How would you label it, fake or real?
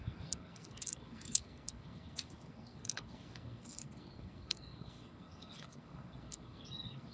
fake